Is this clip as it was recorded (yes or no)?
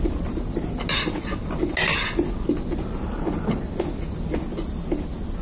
yes